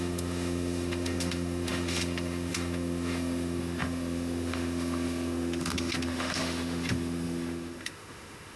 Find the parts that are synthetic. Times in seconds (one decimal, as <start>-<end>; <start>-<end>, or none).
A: 0.0-8.6